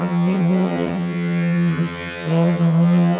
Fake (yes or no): yes